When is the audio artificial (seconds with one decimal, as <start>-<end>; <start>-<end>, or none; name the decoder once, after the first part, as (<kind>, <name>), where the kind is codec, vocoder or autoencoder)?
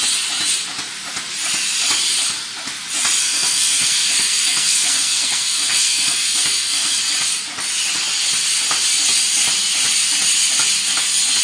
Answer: 3.2-7.0 (codec, SNAC)